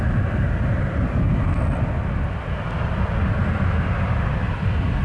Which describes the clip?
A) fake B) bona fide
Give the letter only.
B